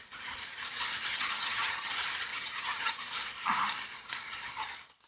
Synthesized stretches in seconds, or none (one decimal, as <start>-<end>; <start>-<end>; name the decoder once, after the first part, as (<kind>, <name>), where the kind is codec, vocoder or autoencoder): 1.1-1.9 (vocoder, HiFi-GAN); 2.3-2.9